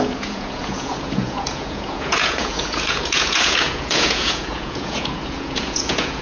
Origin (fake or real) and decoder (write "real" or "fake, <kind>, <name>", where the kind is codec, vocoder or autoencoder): fake, vocoder, Vocos